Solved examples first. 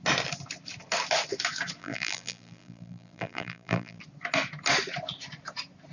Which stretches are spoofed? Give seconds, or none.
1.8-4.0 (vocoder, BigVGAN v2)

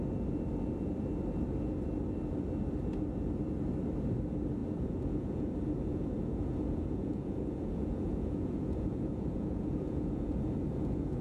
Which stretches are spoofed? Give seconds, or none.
4.6-5.5 (vocoder, Vocos); 5.9-11.2

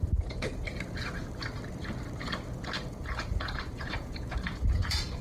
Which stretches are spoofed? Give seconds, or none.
0.0-0.7 (vocoder, Vocos); 2.9-5.2

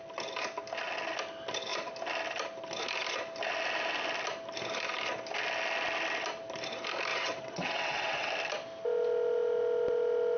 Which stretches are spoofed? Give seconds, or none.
7.1-8.3 (vocoder, WaveNeXt)

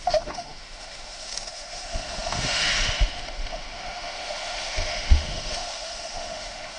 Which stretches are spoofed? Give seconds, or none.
0.0-6.8 (autoencoder, DAC-VAE)

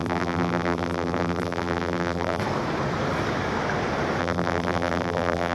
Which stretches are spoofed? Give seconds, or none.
0.0-2.4 (vocoder, BigVGAN v2); 4.2-5.5

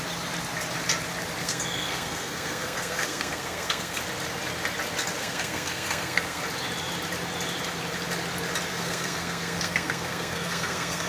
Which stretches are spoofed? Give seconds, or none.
1.4-4.0 (codec, SNAC); 5.2-6.4; 8.7-11.1

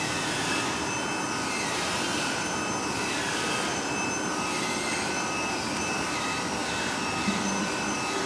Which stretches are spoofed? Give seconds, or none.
none